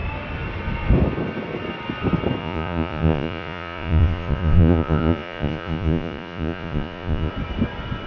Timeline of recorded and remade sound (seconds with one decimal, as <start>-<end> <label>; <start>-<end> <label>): 0.0-2.4 recorded; 2.4-7.3 remade; 7.3-8.1 recorded